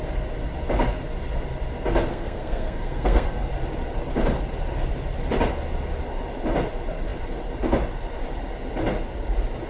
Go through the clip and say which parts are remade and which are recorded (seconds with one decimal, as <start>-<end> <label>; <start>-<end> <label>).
0.0-2.1 recorded; 2.1-3.5 remade; 3.5-9.7 recorded